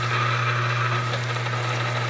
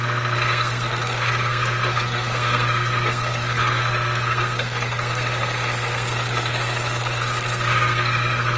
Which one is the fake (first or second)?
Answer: second